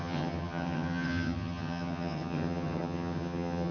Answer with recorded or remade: remade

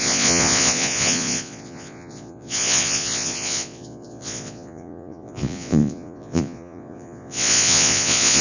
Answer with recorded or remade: remade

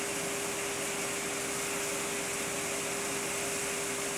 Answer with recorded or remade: recorded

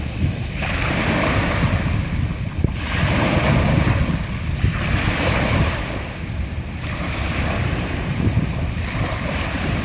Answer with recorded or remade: remade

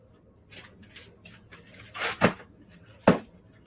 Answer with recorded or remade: recorded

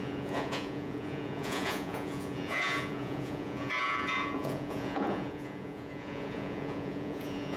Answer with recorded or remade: remade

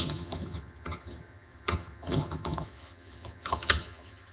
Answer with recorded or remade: remade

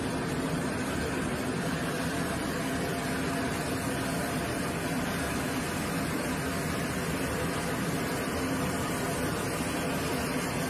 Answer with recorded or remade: recorded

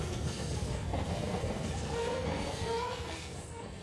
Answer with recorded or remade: remade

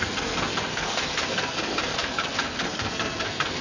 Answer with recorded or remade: remade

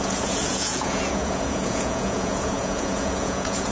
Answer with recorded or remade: remade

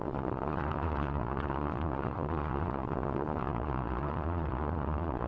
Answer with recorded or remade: remade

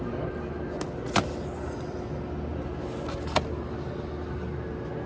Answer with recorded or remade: recorded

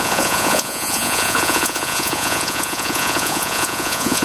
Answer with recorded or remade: remade